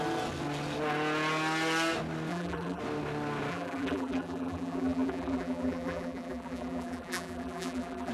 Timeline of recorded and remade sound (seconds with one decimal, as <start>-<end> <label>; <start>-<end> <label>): 0.0-2.3 recorded; 2.3-2.8 remade; 2.8-3.5 recorded; 3.5-8.1 remade